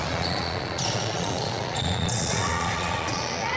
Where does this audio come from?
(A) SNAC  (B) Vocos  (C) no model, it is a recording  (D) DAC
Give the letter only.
B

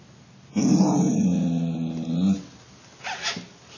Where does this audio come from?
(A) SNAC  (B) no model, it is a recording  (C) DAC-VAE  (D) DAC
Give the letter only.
B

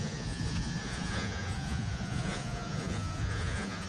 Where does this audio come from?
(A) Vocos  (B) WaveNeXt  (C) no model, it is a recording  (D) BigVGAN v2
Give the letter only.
A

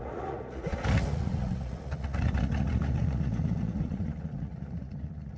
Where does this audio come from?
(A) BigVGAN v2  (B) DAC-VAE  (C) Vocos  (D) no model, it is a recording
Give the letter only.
C